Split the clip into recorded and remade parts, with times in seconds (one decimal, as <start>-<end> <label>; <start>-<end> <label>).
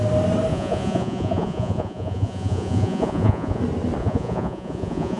0.0-0.5 recorded; 0.5-3.6 remade; 3.6-4.0 recorded; 4.0-5.2 remade